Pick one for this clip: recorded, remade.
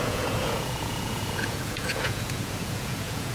remade